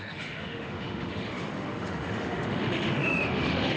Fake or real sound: fake